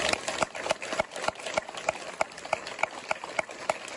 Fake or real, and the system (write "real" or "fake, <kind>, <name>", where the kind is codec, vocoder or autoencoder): real